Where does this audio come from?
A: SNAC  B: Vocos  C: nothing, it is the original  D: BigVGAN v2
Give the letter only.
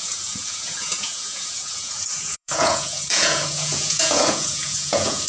B